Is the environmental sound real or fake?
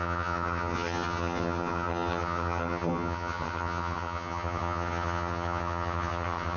fake